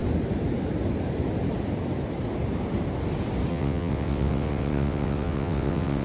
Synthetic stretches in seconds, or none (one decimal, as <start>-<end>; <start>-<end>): 3.5-6.0